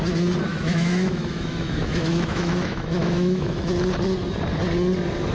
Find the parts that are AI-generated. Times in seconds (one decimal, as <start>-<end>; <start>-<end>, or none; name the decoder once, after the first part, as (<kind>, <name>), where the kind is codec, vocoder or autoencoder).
0.5-3.7 (autoencoder, DAC-VAE)